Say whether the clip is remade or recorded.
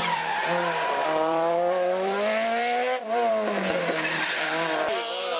remade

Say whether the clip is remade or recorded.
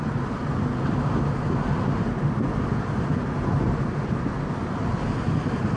recorded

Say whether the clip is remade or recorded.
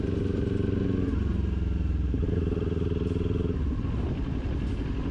recorded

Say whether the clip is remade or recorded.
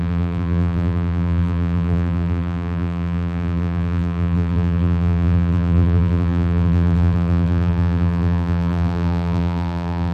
remade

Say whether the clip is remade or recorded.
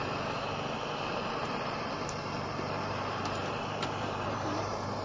remade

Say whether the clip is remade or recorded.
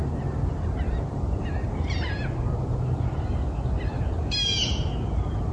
recorded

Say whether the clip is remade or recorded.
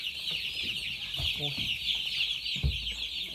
recorded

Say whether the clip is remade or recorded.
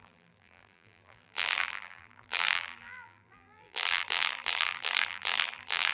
remade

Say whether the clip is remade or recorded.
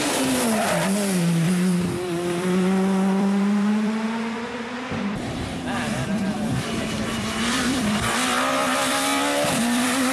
remade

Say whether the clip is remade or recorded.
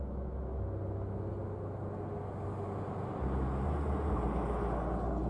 recorded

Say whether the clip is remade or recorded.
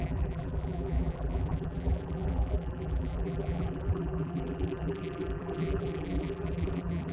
remade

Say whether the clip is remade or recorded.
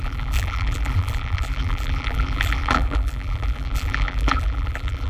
remade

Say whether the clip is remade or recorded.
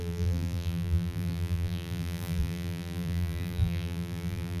remade